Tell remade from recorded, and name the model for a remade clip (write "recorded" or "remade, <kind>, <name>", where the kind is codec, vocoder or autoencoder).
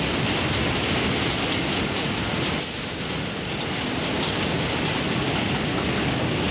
recorded